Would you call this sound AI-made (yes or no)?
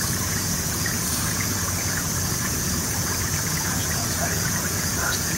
yes